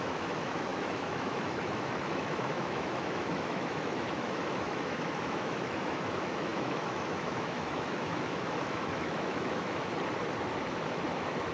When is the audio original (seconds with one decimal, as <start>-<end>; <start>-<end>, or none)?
9.9-10.6